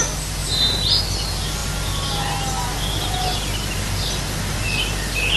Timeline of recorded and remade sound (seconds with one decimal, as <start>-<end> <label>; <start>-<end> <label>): 0.0-5.4 recorded